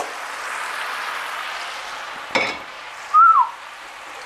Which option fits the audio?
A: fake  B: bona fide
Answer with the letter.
B